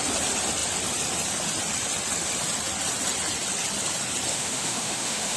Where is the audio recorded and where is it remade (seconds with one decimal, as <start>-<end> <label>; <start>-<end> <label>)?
0.0-4.3 recorded; 4.3-5.4 remade